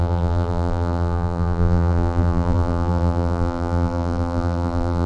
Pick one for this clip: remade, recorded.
remade